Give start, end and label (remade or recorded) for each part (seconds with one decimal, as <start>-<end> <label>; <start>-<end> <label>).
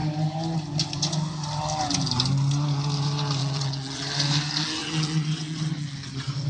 0.0-3.4 recorded; 3.4-4.0 remade; 4.0-4.8 recorded; 4.8-5.7 remade; 5.7-6.5 recorded